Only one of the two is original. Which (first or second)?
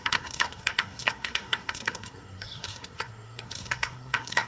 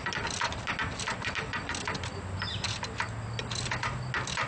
second